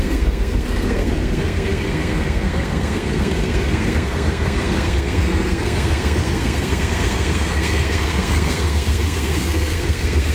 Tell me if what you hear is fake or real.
fake